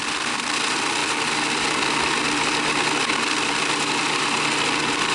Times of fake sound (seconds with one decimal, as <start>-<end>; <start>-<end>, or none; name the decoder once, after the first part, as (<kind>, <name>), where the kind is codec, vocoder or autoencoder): none